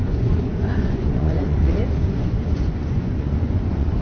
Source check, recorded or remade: remade